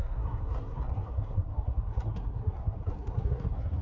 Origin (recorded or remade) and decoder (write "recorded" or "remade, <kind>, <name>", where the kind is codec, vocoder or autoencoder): remade, codec, SNAC